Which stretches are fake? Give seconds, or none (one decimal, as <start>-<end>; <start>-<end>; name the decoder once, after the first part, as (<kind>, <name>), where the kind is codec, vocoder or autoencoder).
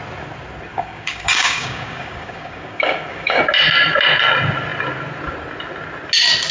0.7-3.4 (codec, DAC)